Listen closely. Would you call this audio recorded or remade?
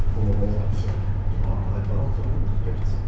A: recorded